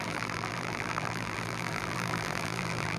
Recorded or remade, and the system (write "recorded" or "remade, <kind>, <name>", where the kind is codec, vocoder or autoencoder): remade, vocoder, BigVGAN v2